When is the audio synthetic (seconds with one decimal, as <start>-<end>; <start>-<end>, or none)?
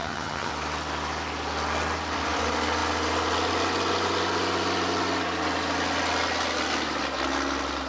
0.0-0.5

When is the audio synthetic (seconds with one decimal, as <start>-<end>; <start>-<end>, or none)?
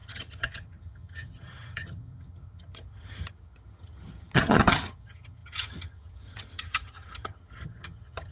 0.0-8.3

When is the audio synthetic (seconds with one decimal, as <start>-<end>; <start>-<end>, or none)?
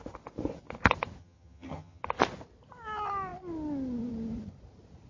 1.2-2.0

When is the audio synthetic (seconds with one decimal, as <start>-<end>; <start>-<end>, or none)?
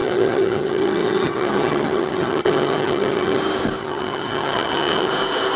0.0-3.4; 3.8-5.1